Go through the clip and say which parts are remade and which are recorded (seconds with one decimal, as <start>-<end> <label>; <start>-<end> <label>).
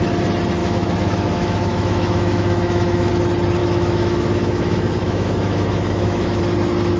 0.0-0.6 recorded; 0.6-3.1 remade; 3.1-3.6 recorded; 3.6-6.4 remade; 6.4-7.0 recorded